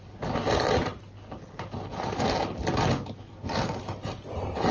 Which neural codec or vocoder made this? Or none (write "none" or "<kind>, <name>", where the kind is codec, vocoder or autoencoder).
none